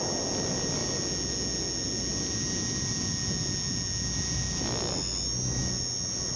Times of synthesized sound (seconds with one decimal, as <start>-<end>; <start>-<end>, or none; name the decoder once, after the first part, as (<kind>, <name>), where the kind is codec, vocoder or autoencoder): none